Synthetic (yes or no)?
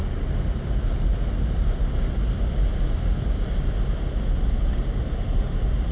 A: no